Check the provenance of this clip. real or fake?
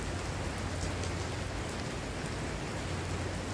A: real